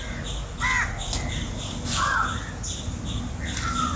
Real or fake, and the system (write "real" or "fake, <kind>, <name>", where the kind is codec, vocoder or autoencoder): real